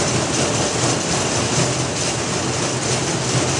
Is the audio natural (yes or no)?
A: yes